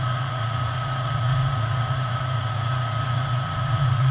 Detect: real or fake fake